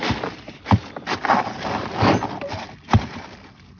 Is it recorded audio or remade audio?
recorded